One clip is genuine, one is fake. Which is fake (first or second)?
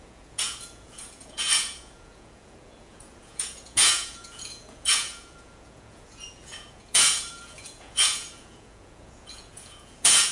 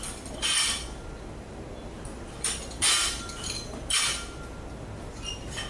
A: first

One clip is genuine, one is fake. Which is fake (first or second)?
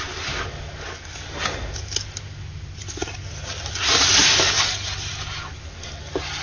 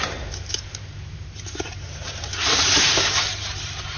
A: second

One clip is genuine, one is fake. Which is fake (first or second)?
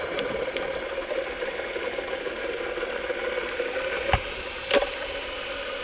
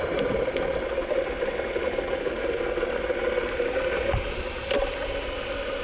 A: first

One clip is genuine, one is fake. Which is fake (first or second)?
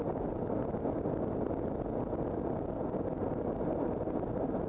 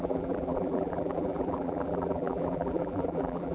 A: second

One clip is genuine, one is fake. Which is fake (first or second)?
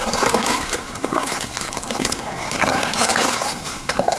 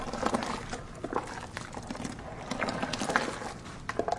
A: first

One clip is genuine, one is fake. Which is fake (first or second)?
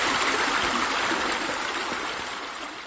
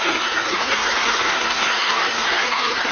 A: second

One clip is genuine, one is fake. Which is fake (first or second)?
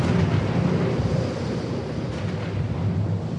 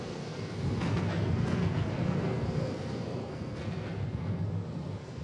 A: second